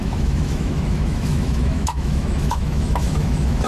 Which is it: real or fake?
fake